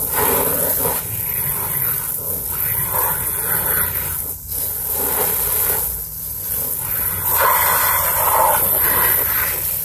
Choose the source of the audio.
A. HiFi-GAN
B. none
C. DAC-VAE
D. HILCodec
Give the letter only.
B